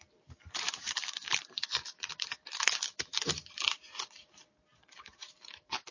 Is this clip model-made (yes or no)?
yes